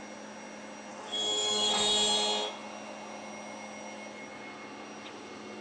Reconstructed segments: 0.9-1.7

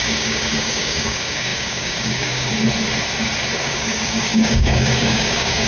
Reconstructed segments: 0.0-2.5; 3.6-5.7

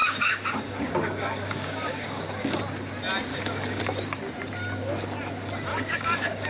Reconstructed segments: 0.0-2.6; 3.3-3.8; 5.7-6.5

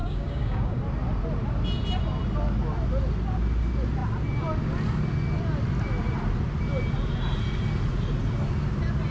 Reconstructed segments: 0.0-0.8

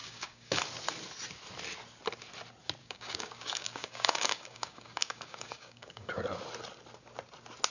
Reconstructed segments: 0.0-0.6; 2.8-6.2